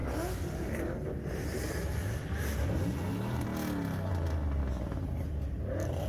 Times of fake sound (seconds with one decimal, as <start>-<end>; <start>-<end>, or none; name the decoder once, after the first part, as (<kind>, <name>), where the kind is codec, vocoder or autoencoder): none

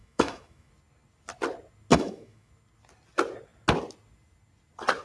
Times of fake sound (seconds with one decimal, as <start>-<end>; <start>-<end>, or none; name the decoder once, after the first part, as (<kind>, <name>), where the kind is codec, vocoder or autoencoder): 0.0-0.7 (autoencoder, DAC-VAE); 1.9-2.5

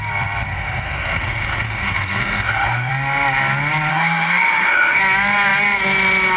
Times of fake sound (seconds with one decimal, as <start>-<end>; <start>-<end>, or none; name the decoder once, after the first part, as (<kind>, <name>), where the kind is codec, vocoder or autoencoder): 0.5-2.9 (autoencoder, DAC-VAE); 3.9-5.0

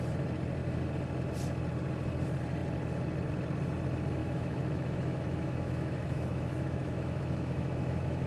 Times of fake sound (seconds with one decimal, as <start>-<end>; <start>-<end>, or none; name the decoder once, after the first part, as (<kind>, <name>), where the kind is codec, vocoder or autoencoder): 4.2-8.3 (autoencoder, DAC-VAE)

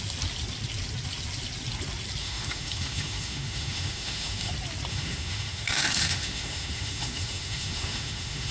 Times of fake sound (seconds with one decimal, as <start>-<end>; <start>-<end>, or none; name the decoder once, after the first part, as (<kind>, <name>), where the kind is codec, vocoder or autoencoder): 2.2-4.5 (autoencoder, DAC-VAE); 4.9-8.5

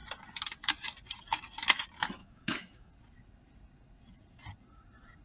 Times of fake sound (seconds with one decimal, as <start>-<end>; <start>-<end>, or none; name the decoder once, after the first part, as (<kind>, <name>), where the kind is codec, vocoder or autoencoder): 2.2-2.9 (autoencoder, DAC-VAE)